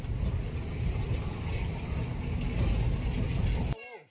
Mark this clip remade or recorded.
recorded